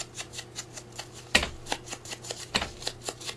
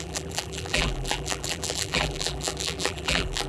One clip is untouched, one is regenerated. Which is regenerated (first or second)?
second